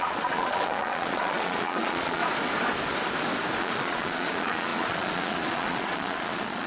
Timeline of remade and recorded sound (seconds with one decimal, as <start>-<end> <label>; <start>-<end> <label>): 0.0-2.2 remade; 2.2-3.6 recorded; 3.6-6.7 remade